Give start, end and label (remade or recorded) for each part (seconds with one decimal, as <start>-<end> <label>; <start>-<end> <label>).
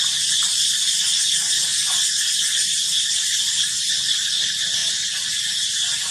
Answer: 0.0-1.7 recorded; 1.7-3.9 remade; 3.9-4.8 recorded; 4.8-5.4 remade; 5.4-6.1 recorded